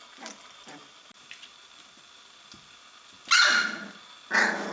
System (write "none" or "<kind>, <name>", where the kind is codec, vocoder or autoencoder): none